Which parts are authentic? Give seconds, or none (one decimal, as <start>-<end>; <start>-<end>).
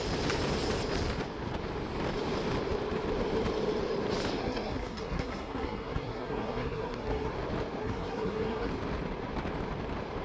0.0-4.4; 7.3-7.8; 8.7-10.2